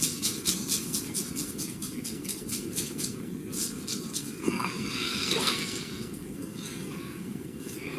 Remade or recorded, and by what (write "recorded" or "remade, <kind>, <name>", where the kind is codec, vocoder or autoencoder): remade, codec, SNAC